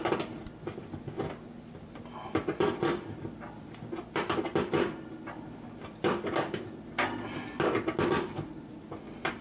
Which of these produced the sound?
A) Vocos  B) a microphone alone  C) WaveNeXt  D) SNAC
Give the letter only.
B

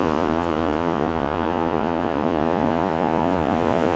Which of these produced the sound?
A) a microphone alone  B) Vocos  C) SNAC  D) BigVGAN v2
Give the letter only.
B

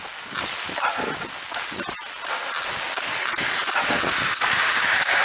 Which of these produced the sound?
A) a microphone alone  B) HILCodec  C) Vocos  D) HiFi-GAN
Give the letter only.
A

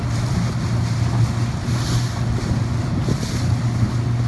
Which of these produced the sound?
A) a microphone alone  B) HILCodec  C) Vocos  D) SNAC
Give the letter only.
A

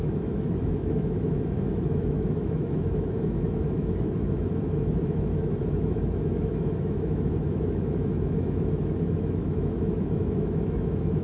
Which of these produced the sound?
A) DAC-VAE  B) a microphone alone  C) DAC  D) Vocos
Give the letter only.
A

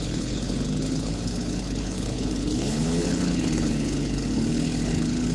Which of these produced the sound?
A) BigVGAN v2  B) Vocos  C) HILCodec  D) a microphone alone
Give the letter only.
C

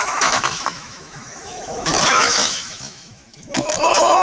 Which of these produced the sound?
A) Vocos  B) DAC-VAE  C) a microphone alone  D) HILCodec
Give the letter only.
B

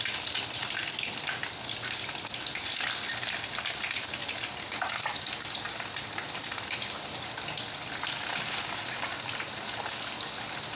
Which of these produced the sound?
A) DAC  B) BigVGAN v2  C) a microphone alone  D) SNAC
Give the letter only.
C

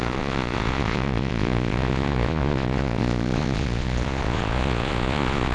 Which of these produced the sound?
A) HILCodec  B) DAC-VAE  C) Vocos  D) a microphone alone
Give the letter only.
C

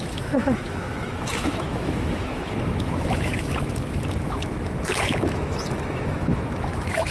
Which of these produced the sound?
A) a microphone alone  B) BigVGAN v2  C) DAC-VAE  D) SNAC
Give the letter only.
C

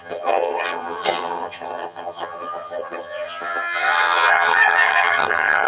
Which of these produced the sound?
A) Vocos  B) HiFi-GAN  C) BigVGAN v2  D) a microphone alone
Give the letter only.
B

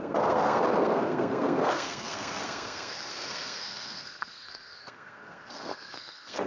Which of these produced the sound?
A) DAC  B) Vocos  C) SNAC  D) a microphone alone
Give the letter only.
C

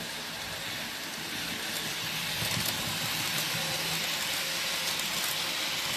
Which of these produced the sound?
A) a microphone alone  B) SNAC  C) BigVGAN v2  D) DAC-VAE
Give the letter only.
A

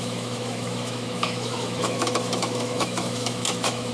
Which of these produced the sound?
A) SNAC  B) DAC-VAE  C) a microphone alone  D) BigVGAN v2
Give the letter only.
B